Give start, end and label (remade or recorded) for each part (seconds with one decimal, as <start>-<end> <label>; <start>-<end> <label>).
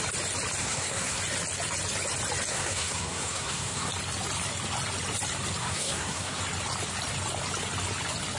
0.0-0.6 recorded; 0.6-1.2 remade; 1.2-2.5 recorded; 2.5-3.9 remade; 3.9-5.6 recorded; 5.6-6.4 remade; 6.4-8.4 recorded